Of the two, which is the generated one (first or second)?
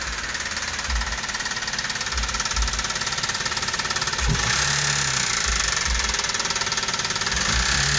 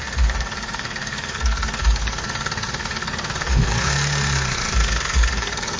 second